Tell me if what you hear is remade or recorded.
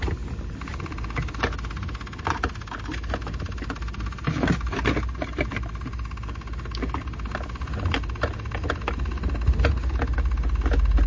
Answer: recorded